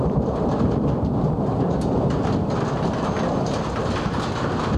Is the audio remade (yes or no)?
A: no